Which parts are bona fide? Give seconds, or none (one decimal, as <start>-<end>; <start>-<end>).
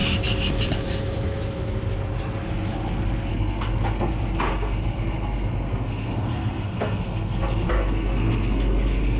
0.0-3.3; 4.1-4.5